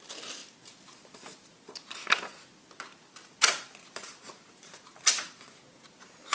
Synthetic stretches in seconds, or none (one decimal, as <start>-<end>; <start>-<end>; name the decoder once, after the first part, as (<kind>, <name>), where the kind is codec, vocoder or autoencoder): 3.2-5.6 (vocoder, Vocos)